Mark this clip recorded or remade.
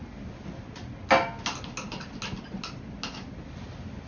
recorded